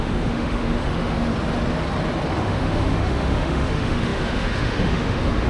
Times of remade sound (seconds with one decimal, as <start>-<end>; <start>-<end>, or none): 0.0-1.3; 2.3-5.5